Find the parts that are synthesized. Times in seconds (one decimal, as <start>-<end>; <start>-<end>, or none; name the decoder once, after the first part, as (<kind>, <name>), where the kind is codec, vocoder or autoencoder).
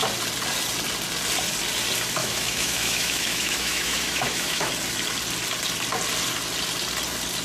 2.2-4.7 (autoencoder, DAC-VAE)